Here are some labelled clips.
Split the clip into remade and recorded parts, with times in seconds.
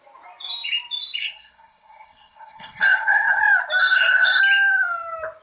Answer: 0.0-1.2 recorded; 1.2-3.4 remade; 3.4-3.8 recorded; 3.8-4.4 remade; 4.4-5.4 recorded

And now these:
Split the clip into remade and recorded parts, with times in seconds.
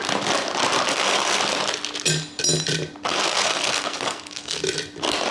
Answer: 0.0-0.9 recorded; 0.9-1.4 remade; 1.4-3.1 recorded; 3.1-4.6 remade; 4.6-5.3 recorded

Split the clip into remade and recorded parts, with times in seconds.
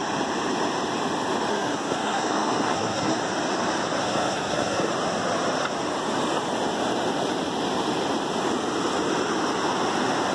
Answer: 0.0-1.5 recorded; 1.5-3.2 remade; 3.2-4.0 recorded; 4.0-4.9 remade; 4.9-10.3 recorded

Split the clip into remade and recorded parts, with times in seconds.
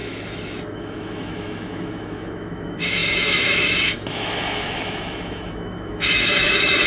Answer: 0.0-6.9 remade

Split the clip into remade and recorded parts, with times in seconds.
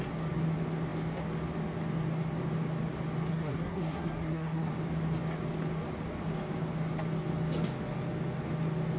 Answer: 0.0-3.3 recorded; 3.3-4.7 remade; 4.7-9.0 recorded